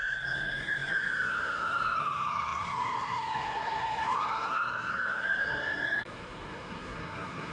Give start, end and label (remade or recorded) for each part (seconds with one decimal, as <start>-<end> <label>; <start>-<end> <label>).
0.0-7.5 remade